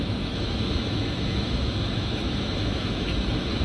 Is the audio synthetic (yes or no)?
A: yes